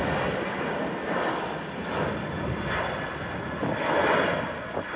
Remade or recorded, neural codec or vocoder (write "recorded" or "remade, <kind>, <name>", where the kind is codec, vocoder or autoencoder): recorded